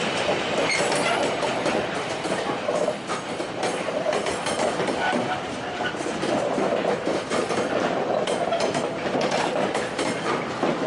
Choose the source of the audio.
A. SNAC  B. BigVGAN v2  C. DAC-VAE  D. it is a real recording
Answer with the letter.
B